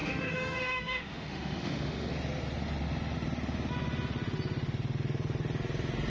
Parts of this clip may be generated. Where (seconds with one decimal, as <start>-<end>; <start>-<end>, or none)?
0.0-2.1